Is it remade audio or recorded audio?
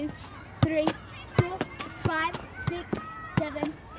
recorded